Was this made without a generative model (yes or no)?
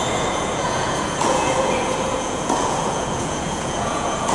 no